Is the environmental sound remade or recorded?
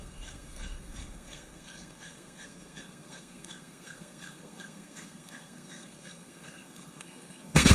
remade